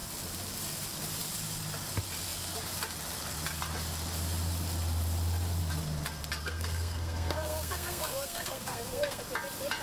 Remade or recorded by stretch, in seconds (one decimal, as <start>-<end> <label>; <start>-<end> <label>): 0.0-6.4 recorded; 6.4-9.2 remade; 9.2-9.8 recorded